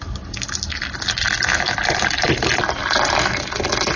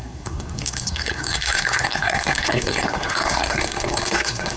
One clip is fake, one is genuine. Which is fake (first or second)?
second